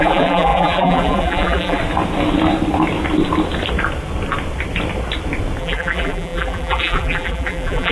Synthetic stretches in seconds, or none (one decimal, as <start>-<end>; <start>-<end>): 0.0-1.8; 5.6-7.9